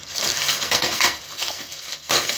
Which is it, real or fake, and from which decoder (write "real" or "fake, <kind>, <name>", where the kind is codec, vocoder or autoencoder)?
fake, codec, SNAC